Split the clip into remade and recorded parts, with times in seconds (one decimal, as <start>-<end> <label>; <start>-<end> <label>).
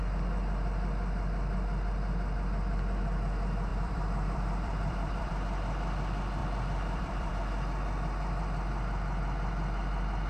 0.0-3.7 recorded; 3.7-5.3 remade; 5.3-6.4 recorded; 6.4-7.3 remade; 7.3-10.3 recorded